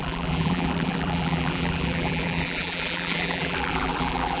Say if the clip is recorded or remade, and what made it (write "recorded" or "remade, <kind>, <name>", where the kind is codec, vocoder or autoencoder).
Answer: remade, vocoder, BigVGAN v2